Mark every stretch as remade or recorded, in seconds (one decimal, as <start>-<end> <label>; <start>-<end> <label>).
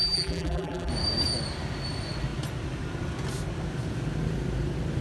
0.0-0.9 remade; 0.9-5.0 recorded